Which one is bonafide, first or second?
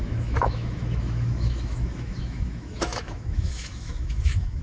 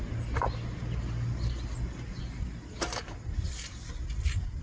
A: second